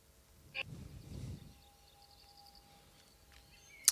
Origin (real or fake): real